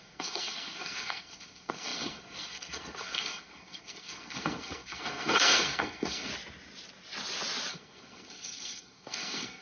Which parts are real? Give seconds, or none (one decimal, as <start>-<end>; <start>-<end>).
6.3-7.7